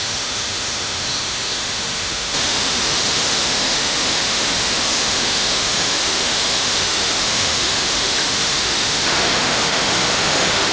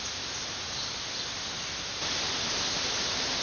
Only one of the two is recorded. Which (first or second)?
second